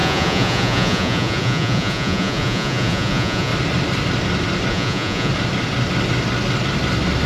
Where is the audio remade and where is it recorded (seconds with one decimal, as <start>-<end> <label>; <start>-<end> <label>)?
0.0-3.5 remade; 3.5-4.7 recorded; 4.7-5.3 remade; 5.3-7.3 recorded

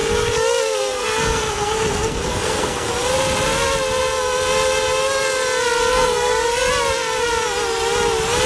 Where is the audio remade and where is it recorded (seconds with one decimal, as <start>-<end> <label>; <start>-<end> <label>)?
0.0-2.9 remade; 2.9-5.9 recorded; 5.9-6.7 remade; 6.7-8.5 recorded